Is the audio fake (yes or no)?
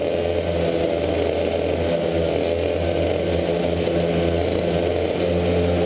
no